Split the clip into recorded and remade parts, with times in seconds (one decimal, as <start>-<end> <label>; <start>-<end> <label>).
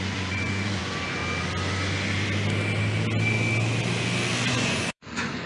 0.0-1.2 remade; 1.2-4.5 recorded; 4.5-5.5 remade